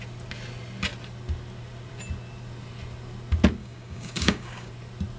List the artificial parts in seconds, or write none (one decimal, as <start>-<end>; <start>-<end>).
3.6-4.7